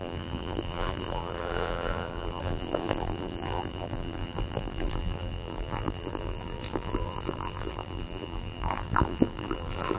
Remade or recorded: remade